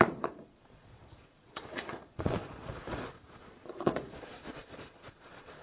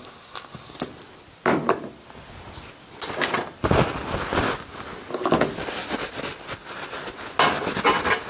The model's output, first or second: first